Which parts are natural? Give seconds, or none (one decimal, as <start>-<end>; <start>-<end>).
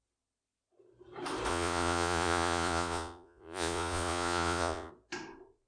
0.0-1.5; 4.9-5.7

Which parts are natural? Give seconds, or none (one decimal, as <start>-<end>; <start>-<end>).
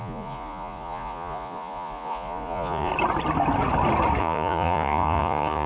2.9-4.2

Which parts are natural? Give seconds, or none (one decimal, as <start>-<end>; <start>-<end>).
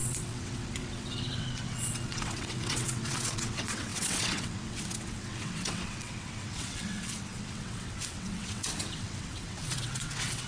none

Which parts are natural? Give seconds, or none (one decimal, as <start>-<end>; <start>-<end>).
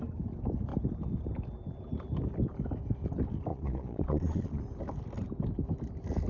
0.0-3.5; 4.6-6.3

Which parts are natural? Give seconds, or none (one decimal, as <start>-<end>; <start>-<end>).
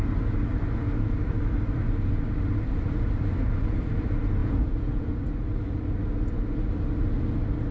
0.0-4.4; 5.1-7.7